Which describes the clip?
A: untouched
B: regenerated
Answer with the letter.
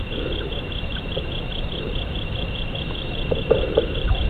B